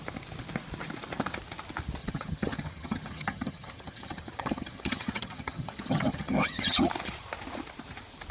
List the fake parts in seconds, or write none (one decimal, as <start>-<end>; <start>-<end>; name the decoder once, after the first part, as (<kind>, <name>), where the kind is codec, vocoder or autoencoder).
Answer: 2.0-6.9 (vocoder, HiFi-GAN)